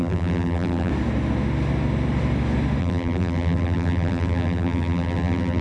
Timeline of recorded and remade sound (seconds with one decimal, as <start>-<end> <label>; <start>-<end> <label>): 0.0-0.9 remade; 0.9-2.8 recorded; 2.8-5.6 remade